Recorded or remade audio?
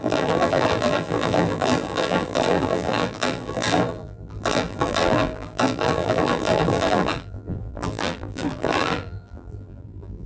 remade